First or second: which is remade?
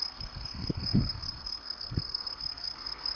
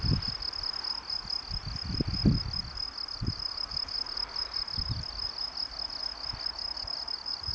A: first